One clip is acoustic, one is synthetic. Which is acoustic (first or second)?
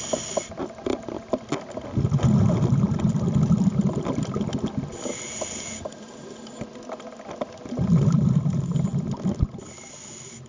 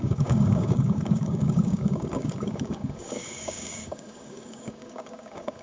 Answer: first